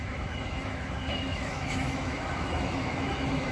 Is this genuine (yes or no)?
no